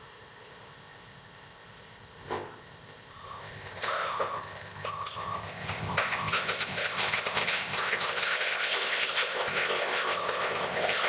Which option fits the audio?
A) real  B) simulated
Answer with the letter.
B